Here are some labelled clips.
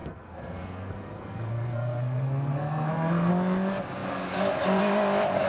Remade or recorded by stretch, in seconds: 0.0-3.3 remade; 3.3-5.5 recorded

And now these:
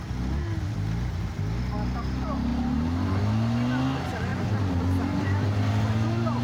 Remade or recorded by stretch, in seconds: 0.0-2.5 recorded; 2.5-3.2 remade; 3.2-6.4 recorded

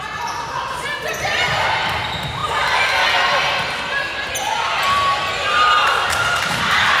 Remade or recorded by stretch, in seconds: 0.0-7.0 recorded

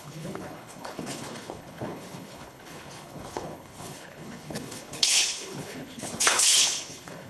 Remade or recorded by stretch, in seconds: 0.0-7.3 remade

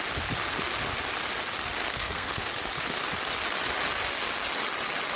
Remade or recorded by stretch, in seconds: 0.0-1.8 recorded; 1.8-2.4 remade; 2.4-5.2 recorded

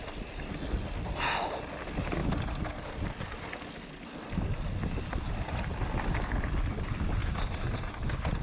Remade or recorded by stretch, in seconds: 0.0-7.2 recorded; 7.2-7.9 remade; 7.9-8.4 recorded